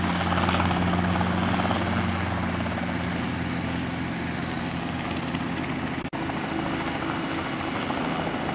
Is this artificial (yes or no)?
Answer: no